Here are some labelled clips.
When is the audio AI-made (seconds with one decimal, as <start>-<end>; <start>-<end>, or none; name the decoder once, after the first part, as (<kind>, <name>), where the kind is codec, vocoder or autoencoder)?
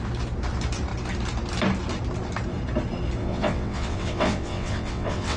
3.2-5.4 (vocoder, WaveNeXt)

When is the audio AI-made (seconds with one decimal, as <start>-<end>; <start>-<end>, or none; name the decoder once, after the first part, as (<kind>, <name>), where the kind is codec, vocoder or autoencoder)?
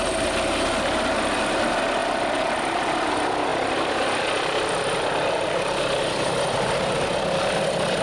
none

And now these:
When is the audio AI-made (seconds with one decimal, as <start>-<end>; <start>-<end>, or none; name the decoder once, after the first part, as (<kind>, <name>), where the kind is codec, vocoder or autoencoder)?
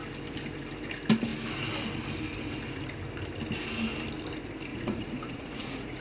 4.7-6.0 (vocoder, Vocos)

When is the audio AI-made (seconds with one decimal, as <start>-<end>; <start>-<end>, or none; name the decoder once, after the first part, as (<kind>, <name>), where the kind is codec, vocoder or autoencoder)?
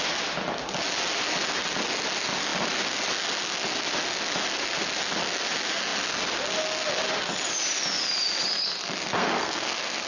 9.2-10.1 (codec, SNAC)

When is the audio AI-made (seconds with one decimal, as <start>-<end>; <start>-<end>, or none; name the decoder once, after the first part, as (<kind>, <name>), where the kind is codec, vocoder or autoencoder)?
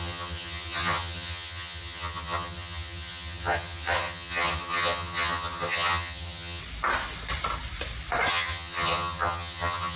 0.0-6.6 (vocoder, HiFi-GAN); 8.3-10.0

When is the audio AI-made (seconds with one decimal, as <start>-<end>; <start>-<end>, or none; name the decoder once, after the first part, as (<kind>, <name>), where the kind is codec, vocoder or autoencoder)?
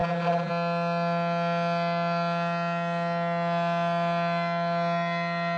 0.0-0.5 (vocoder, Vocos)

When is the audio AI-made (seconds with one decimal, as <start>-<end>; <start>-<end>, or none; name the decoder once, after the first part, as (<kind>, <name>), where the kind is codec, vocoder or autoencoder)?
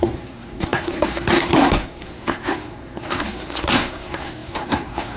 0.0-5.2 (codec, SNAC)